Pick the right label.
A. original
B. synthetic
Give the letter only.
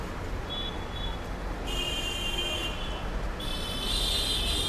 A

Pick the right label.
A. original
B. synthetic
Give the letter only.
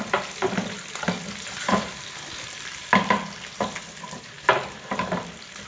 B